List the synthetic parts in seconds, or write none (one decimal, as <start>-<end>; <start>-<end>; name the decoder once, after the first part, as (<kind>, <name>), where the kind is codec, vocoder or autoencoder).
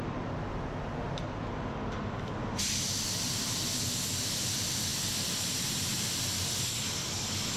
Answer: none